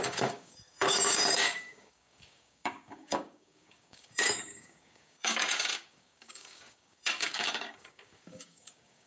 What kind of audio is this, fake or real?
fake